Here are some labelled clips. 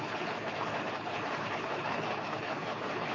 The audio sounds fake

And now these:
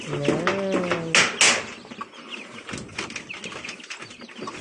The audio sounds real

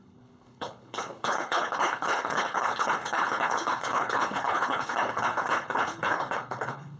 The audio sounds fake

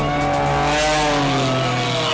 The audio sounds real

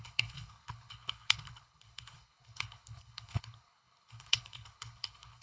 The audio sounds fake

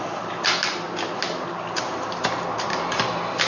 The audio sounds real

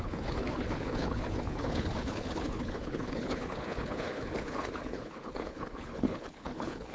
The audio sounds fake